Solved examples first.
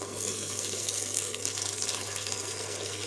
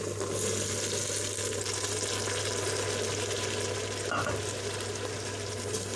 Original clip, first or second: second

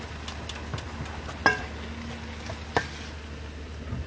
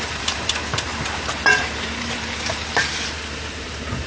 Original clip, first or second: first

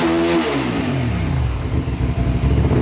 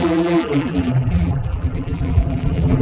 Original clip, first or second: first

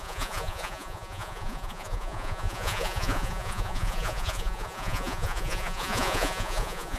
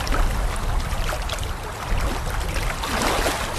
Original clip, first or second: second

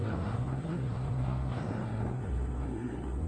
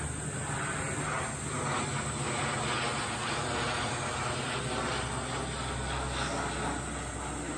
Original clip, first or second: second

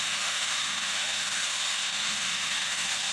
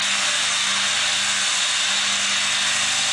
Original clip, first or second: second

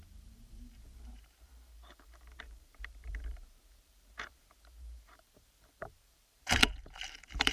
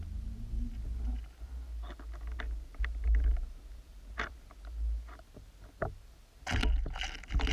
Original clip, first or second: second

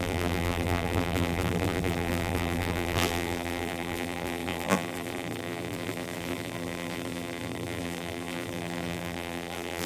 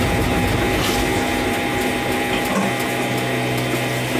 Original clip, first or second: second